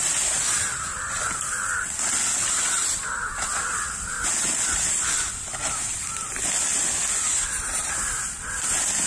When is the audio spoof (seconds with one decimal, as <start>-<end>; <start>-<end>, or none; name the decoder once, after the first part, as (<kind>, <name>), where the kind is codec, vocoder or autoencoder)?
none